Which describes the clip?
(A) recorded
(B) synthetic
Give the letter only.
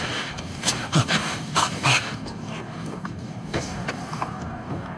B